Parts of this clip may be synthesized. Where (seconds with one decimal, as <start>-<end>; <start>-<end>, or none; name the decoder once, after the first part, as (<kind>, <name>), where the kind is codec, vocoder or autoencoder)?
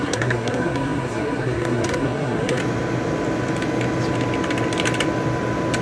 0.0-2.6 (codec, SNAC)